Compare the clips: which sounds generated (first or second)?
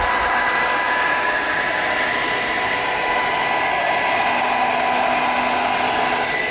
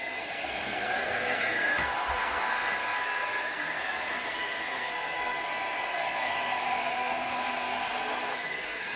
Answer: second